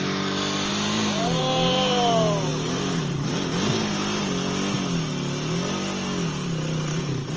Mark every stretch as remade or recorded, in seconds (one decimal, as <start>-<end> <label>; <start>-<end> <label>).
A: 0.0-0.7 recorded; 0.7-1.4 remade; 1.4-2.5 recorded; 2.5-3.2 remade; 3.2-7.4 recorded